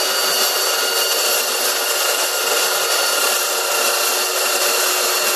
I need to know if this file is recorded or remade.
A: recorded